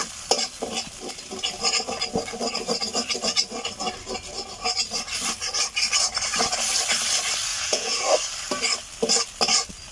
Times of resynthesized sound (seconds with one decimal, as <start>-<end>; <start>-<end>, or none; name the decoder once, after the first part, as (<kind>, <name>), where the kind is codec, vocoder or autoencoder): 7.5-8.0 (vocoder, Vocos)

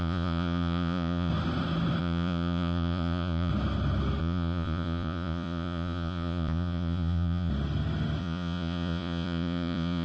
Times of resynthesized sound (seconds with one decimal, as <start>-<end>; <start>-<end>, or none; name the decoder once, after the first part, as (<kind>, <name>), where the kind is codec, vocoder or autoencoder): 0.0-1.3 (vocoder, Vocos); 2.0-3.5; 4.2-7.5; 8.2-10.0